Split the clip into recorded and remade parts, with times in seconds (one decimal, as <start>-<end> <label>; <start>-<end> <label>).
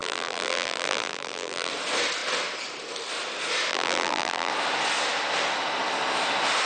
0.0-1.7 remade; 1.7-3.7 recorded; 3.7-4.5 remade; 4.5-6.7 recorded